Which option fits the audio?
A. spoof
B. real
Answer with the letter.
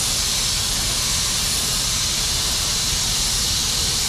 A